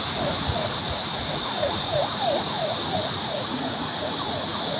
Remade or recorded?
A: remade